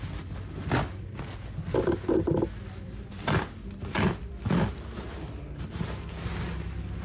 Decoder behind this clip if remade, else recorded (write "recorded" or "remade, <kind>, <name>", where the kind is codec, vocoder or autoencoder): recorded